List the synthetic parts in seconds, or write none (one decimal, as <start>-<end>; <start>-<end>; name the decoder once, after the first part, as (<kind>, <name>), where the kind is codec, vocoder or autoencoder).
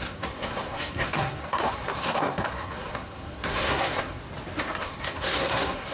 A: 0.0-4.2 (codec, SNAC); 4.8-5.9